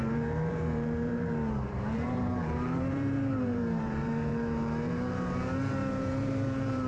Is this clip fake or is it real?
fake